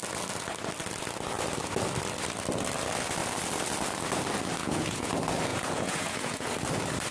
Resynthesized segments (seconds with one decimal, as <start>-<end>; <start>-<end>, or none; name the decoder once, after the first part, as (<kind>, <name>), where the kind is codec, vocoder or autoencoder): 4.6-5.1 (vocoder, Vocos); 5.5-6.5